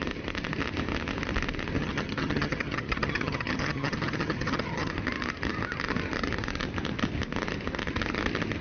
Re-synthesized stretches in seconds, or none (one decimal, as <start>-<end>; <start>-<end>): 1.8-4.9